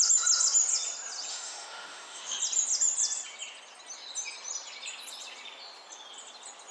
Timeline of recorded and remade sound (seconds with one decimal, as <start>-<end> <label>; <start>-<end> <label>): 0.0-1.3 recorded; 1.3-2.4 remade; 2.4-6.7 recorded

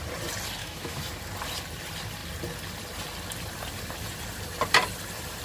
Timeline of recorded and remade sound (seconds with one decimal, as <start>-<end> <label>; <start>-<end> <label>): 0.0-0.6 recorded; 0.6-1.1 remade; 1.1-5.4 recorded

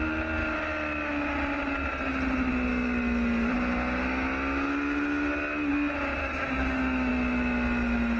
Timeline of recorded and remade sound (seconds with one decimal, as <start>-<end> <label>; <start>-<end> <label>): 0.0-6.2 recorded; 6.2-7.1 remade; 7.1-8.2 recorded

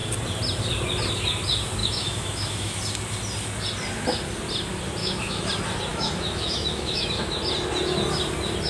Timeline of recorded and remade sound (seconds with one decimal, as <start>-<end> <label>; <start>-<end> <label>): 0.0-1.8 recorded; 1.8-2.8 remade; 2.8-5.0 recorded; 5.0-5.5 remade; 5.5-5.9 recorded; 5.9-7.4 remade; 7.4-8.7 recorded